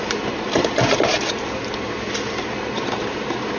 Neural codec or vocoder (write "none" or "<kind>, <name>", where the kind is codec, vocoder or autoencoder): none